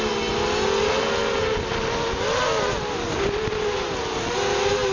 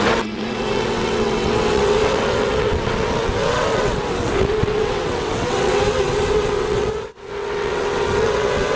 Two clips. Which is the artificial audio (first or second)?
second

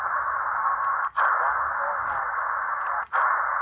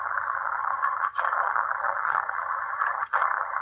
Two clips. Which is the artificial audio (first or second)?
second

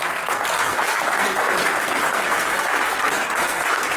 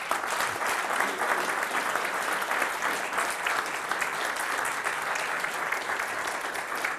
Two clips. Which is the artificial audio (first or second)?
first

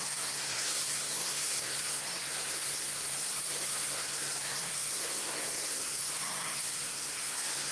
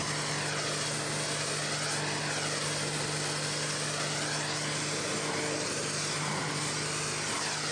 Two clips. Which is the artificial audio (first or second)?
first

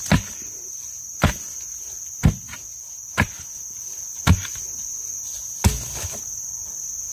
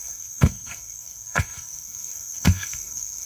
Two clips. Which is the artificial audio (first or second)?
second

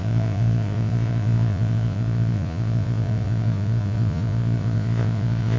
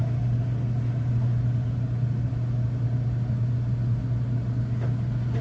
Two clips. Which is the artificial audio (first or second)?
first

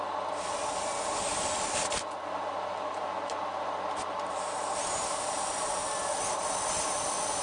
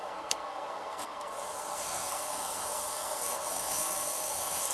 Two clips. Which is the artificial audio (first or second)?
second